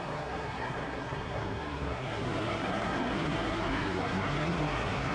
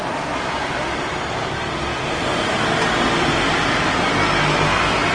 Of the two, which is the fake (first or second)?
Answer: first